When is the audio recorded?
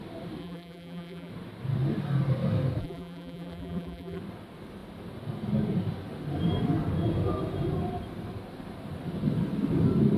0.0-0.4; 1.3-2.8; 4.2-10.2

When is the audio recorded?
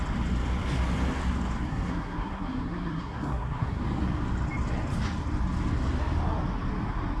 0.0-1.7; 3.8-7.2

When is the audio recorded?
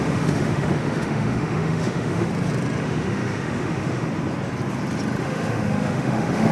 2.3-2.8; 4.1-5.2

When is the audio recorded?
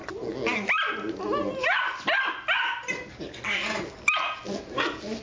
0.0-5.2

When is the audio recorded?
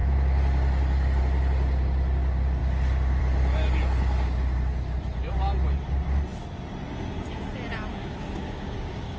0.0-7.9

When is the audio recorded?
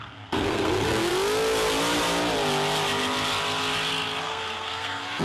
1.1-4.2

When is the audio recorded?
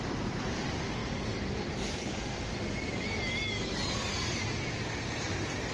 0.0-5.7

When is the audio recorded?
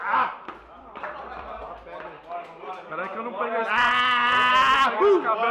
1.6-5.5